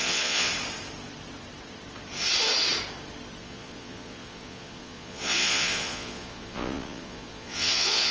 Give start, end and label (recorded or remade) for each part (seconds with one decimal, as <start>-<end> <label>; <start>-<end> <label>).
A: 0.0-0.5 remade; 0.5-3.4 recorded; 3.4-8.1 remade